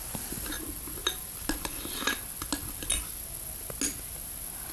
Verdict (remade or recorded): recorded